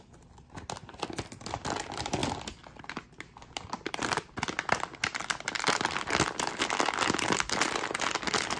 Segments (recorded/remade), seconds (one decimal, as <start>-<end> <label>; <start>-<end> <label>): 0.0-8.6 recorded

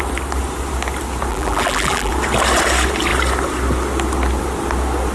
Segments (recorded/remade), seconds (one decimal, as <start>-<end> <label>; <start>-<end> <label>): 0.0-1.3 recorded; 1.3-2.1 remade; 2.1-5.1 recorded

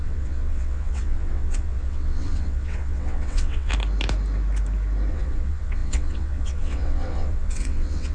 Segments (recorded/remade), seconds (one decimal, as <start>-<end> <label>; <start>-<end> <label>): 0.0-3.7 remade; 3.7-5.1 recorded; 5.1-8.1 remade

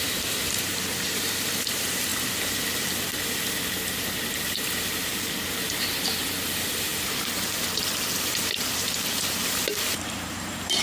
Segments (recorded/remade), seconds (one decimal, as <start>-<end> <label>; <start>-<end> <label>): 0.0-2.1 remade; 2.1-4.0 recorded; 4.0-6.9 remade; 6.9-9.9 recorded; 9.9-10.8 remade

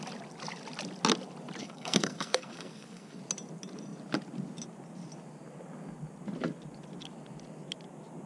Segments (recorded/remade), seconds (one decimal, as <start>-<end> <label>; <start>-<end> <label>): 0.0-1.6 recorded; 1.6-3.2 remade; 3.2-8.3 recorded

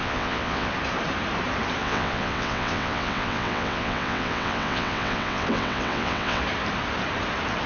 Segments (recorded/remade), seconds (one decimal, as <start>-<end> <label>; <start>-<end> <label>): 0.0-0.7 remade; 0.7-1.8 recorded; 1.8-6.4 remade; 6.4-7.7 recorded

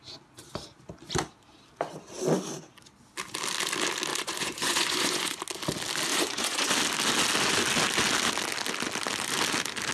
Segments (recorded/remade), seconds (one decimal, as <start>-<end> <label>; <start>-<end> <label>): 0.0-4.1 recorded; 4.1-5.4 remade; 5.4-6.1 recorded; 6.1-6.7 remade; 6.7-9.9 recorded